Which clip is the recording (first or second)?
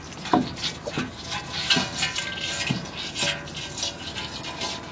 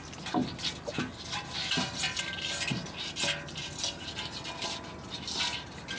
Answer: first